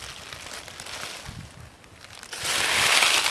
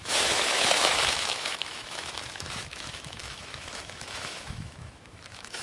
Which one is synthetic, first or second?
second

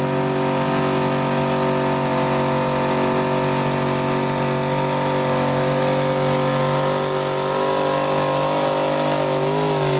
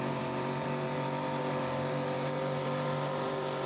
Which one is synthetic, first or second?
second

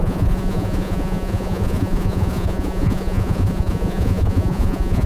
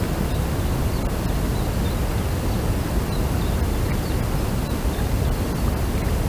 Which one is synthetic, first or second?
first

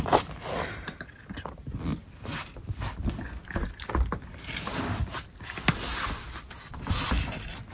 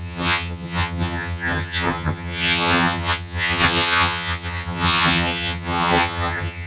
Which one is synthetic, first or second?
second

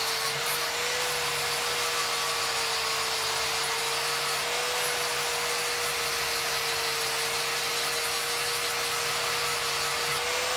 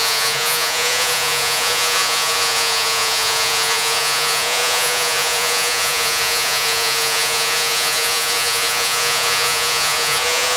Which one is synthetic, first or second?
second